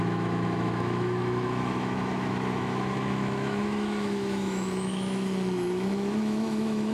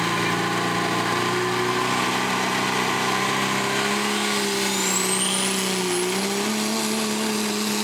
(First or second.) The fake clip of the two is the first